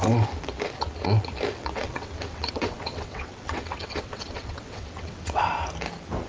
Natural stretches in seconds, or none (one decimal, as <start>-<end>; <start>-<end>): 0.0-1.6; 5.4-6.3